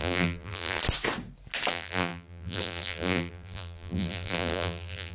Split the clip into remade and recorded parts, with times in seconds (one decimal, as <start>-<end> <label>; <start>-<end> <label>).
0.0-0.8 remade; 0.8-1.7 recorded; 1.7-5.1 remade